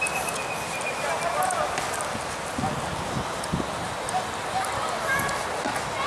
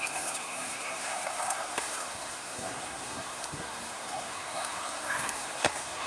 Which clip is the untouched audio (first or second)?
first